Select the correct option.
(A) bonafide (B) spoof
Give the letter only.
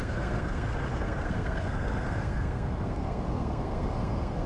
B